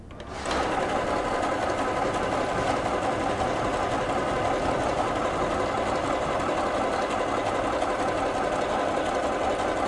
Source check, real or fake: real